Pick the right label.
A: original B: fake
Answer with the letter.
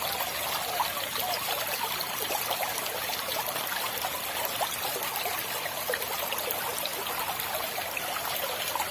A